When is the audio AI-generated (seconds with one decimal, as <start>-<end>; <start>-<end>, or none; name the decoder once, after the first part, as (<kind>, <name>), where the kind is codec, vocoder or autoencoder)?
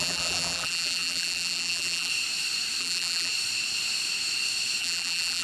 0.0-2.1 (vocoder, BigVGAN v2); 2.8-3.3; 4.8-5.4